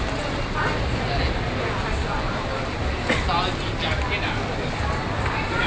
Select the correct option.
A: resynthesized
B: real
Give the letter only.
B